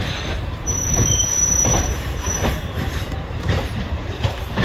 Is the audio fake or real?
fake